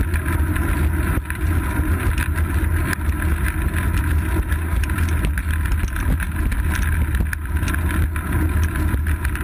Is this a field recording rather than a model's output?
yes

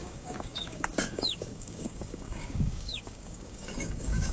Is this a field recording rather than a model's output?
no